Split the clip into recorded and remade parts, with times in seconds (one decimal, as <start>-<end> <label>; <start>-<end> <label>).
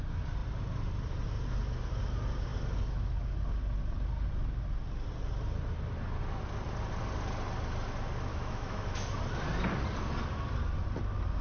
0.0-8.3 recorded; 8.3-9.1 remade; 9.1-11.4 recorded